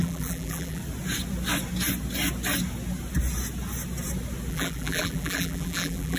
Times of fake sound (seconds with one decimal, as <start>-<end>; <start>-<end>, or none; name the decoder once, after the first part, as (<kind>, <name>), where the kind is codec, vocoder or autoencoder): 0.0-0.8 (vocoder, BigVGAN v2); 4.5-6.2